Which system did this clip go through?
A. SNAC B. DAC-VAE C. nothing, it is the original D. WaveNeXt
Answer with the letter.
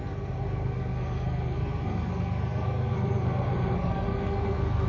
A